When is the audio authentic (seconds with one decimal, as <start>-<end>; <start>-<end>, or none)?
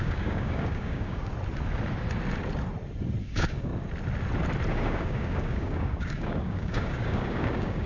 1.3-3.2; 3.7-4.7